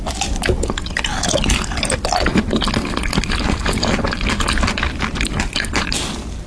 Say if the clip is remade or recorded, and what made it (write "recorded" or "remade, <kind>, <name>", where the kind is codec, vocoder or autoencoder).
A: recorded